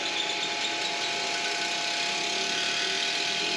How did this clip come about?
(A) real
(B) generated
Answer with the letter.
A